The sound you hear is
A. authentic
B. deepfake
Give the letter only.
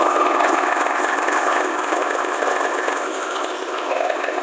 B